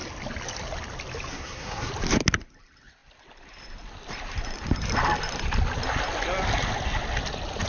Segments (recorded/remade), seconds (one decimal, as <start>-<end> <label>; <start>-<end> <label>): 0.0-1.3 recorded; 1.3-1.9 remade; 1.9-7.7 recorded